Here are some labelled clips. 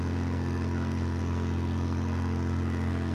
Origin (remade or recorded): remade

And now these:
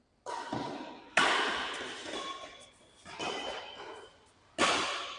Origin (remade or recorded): recorded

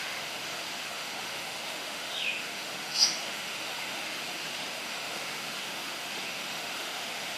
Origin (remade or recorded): remade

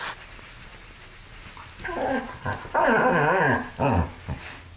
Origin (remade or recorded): recorded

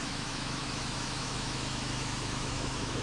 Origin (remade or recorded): remade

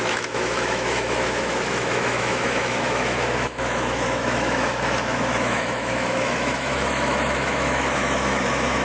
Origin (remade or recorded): remade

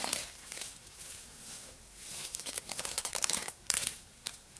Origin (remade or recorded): remade